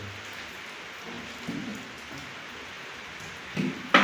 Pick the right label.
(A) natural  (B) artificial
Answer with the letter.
A